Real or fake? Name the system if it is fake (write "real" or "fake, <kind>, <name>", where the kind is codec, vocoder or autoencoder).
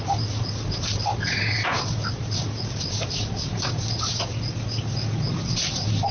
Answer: real